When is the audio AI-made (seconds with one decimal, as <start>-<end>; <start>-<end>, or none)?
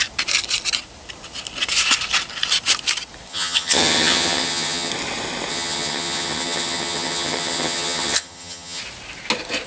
3.3-4.9; 5.5-8.8